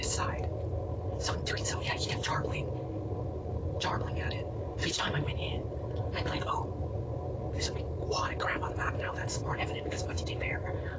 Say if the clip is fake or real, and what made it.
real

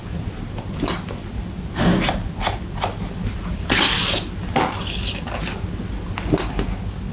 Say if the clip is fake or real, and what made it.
real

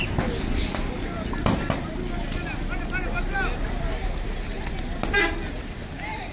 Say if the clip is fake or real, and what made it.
real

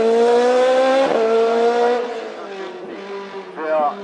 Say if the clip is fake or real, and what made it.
real